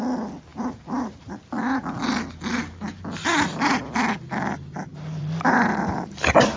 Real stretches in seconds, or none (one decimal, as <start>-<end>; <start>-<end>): 0.0-0.5; 1.3-4.9

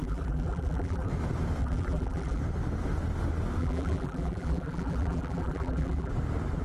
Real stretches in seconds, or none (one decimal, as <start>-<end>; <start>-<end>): 1.1-1.6; 2.4-3.6; 6.1-6.6

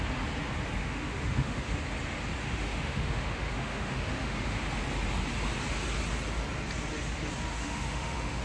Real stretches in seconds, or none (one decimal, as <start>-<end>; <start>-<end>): 0.0-0.8; 1.7-2.4; 4.6-7.5

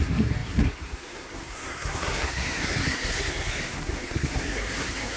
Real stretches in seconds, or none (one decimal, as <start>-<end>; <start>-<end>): none

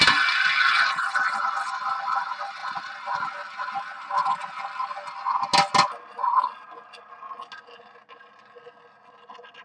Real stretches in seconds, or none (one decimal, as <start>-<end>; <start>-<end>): 0.0-9.6

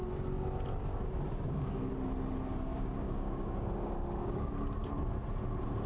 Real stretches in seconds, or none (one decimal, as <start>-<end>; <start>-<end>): 0.0-0.9; 1.9-2.5; 4.5-5.9

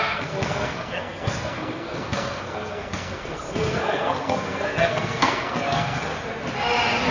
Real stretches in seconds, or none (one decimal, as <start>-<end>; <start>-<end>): 6.1-7.1